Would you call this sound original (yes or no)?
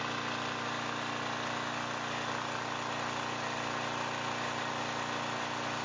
yes